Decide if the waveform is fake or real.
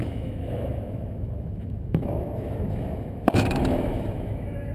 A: fake